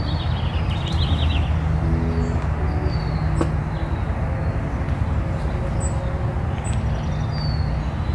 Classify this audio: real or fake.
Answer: real